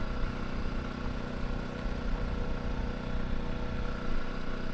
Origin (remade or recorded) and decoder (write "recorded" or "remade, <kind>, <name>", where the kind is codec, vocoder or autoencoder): recorded